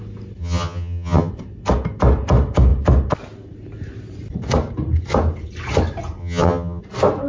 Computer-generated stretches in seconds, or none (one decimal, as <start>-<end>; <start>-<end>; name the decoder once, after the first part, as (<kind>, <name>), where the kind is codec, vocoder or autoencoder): 0.4-1.3 (vocoder, HiFi-GAN); 6.2-6.8